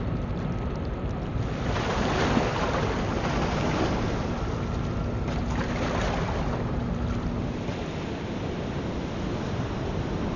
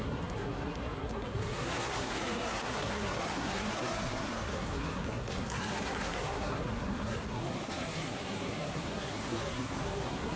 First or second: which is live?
first